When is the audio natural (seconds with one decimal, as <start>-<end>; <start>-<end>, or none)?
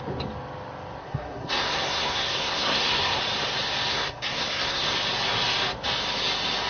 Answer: 0.0-1.0; 3.2-3.9; 4.9-6.7